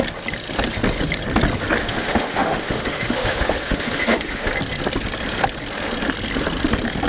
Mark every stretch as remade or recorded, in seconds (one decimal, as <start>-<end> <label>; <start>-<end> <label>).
0.0-1.8 recorded; 1.8-4.5 remade; 4.5-7.1 recorded